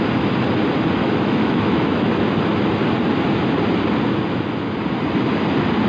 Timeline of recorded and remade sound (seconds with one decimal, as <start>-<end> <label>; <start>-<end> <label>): 0.0-1.0 recorded; 1.0-2.3 remade; 2.3-5.9 recorded